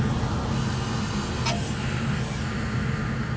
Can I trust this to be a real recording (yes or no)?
yes